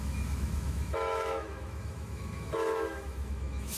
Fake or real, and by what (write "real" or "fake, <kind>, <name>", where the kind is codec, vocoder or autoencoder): fake, autoencoder, DAC-VAE